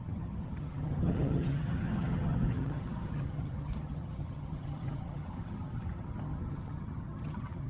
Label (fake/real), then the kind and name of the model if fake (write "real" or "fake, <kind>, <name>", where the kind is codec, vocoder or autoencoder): fake, vocoder, HiFi-GAN